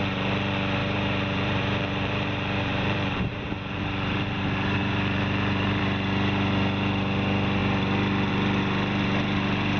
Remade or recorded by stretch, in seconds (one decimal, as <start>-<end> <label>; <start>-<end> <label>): 0.0-0.8 recorded; 0.8-3.7 remade; 3.7-4.8 recorded; 4.8-5.8 remade; 5.8-9.8 recorded